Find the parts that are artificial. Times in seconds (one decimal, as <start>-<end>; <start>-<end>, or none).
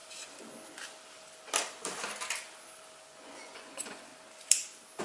3.0-4.1